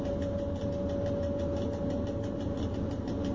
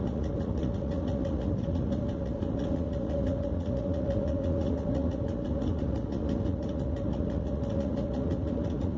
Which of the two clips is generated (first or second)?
second